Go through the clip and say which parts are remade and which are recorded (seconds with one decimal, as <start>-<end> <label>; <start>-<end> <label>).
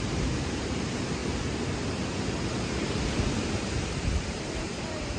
0.0-1.2 remade; 1.2-3.4 recorded; 3.4-5.2 remade